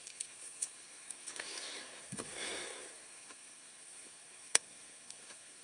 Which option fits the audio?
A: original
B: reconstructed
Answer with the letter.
B